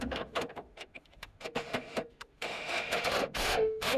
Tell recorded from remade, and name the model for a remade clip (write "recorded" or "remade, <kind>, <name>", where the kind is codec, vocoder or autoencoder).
remade, autoencoder, DAC-VAE